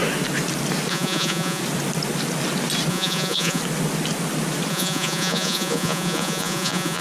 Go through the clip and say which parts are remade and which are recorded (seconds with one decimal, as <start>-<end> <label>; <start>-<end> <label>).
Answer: 0.0-0.9 recorded; 0.9-1.6 remade; 1.6-2.9 recorded; 2.9-3.6 remade; 3.6-4.7 recorded; 4.7-7.0 remade